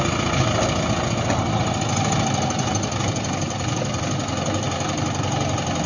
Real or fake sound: real